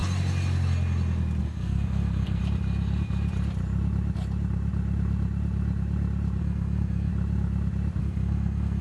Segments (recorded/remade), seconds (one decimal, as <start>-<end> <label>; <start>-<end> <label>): 0.0-1.4 recorded; 1.4-2.4 remade; 2.4-6.4 recorded; 6.4-7.1 remade; 7.1-8.0 recorded; 8.0-8.8 remade